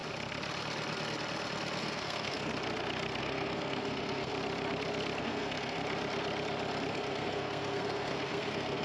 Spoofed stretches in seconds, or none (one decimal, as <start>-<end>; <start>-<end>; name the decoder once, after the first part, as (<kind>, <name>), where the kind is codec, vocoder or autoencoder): 1.8-2.5 (codec, SNAC); 3.2-4.3; 5.2-5.8; 6.9-8.8